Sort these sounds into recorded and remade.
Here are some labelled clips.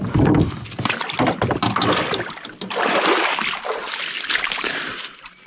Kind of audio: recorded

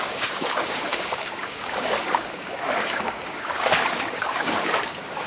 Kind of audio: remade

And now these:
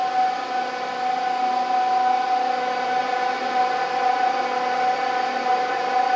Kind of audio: recorded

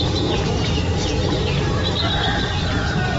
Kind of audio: remade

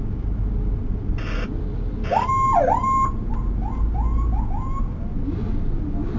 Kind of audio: recorded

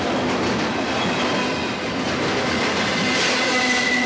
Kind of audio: recorded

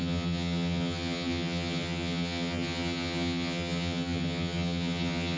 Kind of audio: remade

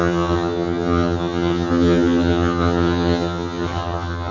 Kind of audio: remade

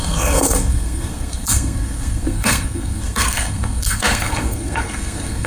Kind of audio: remade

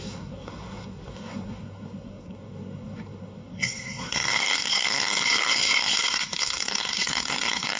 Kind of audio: remade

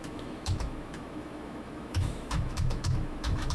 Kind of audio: remade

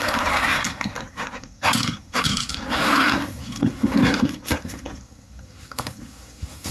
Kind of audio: remade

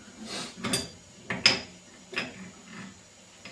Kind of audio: recorded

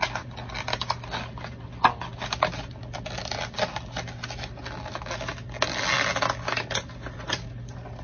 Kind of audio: recorded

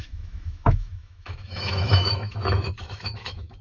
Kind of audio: remade